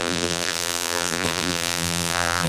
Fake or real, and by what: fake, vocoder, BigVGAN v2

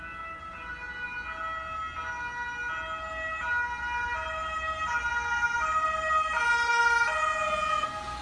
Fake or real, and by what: real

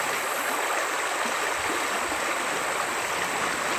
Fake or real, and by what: real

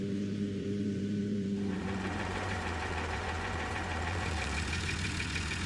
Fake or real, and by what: fake, vocoder, Vocos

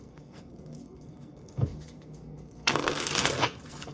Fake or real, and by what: fake, codec, SNAC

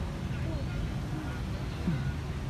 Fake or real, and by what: real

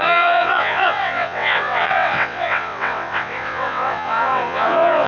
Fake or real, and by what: fake, vocoder, WaveNeXt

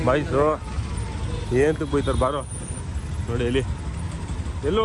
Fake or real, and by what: real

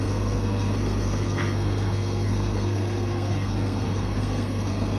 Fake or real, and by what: fake, codec, SNAC